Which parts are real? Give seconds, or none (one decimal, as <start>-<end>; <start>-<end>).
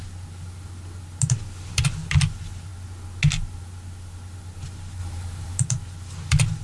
0.0-5.0; 5.6-6.6